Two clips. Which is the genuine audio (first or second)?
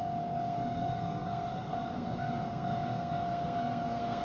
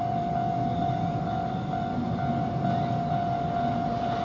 second